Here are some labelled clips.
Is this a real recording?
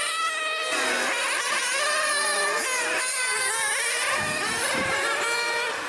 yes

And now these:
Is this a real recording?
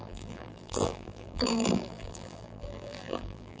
no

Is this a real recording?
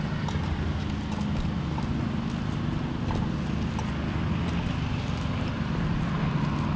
yes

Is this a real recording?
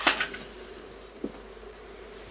yes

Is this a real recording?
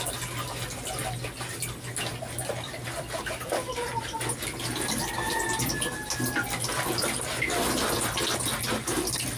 yes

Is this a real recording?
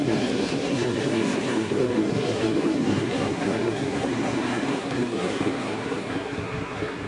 no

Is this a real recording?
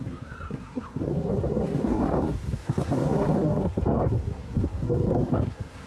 no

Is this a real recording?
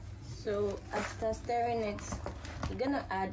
yes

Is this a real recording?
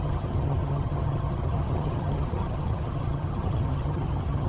no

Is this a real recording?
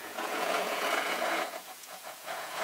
no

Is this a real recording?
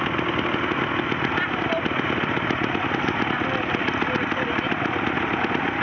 yes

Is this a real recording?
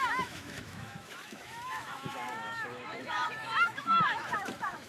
no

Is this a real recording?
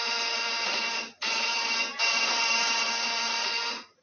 yes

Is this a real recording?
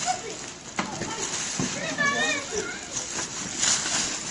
yes